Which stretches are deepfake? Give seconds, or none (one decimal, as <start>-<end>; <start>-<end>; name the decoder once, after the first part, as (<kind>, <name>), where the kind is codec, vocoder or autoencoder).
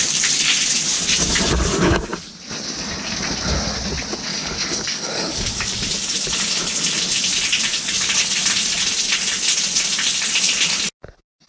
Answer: 4.3-5.9 (codec, DAC); 7.7-8.2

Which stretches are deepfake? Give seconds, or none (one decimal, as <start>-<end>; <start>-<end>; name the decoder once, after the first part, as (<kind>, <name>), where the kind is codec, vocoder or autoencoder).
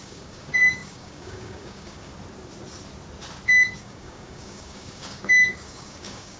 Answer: 0.0-2.1 (codec, DAC); 3.8-6.4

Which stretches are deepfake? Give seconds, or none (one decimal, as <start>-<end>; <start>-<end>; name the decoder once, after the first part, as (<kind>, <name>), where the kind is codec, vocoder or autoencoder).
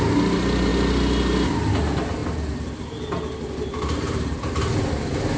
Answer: none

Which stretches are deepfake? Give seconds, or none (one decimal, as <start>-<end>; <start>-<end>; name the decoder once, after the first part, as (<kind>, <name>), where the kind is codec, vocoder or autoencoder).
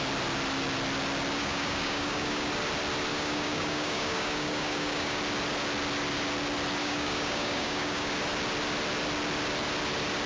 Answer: 1.4-2.5 (codec, DAC); 3.1-5.2; 6.8-8.1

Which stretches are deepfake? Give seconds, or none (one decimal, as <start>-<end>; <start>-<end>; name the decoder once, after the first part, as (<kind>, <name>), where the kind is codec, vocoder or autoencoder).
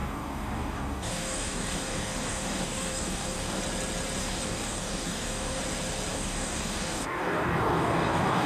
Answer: 0.0-3.6 (codec, DAC); 4.2-5.6; 6.1-8.5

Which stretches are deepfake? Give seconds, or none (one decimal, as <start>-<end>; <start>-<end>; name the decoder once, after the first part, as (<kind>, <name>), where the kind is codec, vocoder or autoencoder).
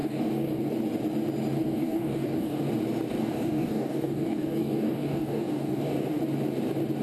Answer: 0.0-0.6 (codec, DAC); 1.6-2.6; 3.2-6.2